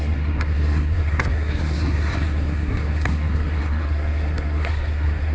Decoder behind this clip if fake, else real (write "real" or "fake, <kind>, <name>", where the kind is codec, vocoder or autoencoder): fake, codec, SNAC